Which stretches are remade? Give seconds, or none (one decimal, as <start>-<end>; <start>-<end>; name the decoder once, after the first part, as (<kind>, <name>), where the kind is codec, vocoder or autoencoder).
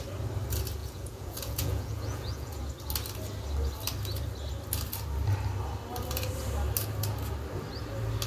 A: 0.8-2.6 (vocoder, Vocos)